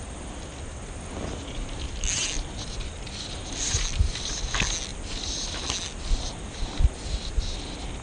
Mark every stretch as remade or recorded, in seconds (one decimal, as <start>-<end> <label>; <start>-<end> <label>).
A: 0.0-8.0 recorded